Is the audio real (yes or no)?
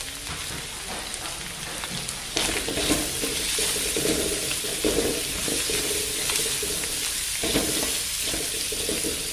yes